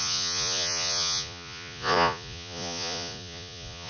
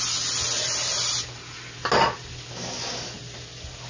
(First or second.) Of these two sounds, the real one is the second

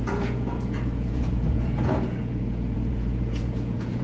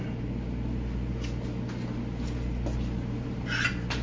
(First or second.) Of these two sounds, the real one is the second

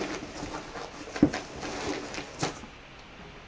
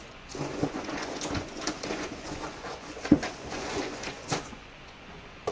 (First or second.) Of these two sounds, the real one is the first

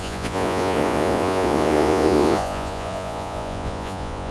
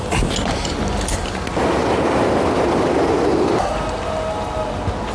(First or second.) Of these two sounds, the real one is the second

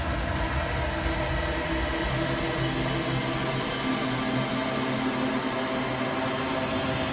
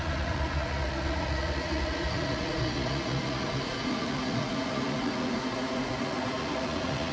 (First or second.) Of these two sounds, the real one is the first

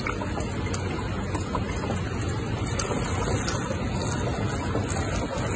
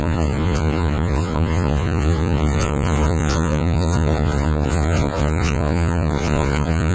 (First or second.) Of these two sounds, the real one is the first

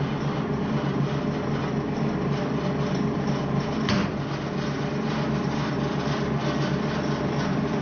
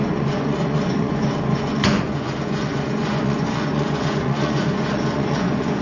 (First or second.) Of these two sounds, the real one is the first